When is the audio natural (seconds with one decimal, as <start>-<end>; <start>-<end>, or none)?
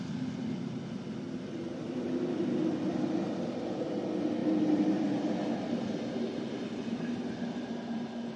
0.0-8.4